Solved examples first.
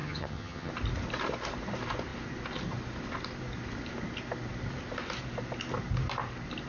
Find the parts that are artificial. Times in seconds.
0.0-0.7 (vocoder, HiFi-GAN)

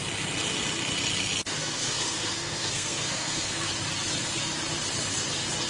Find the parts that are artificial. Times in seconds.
1.6-3.7 (codec, SNAC)